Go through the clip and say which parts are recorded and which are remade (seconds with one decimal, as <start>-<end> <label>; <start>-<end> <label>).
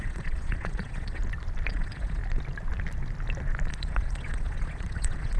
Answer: 0.0-1.2 remade; 1.2-1.7 recorded; 1.7-2.2 remade; 2.2-3.7 recorded; 3.7-5.4 remade